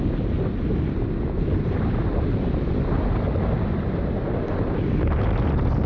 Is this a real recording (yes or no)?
yes